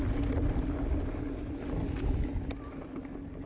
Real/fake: real